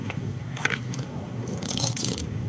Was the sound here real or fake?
fake